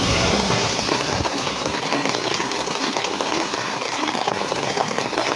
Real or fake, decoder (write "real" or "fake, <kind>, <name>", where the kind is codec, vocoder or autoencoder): fake, codec, SNAC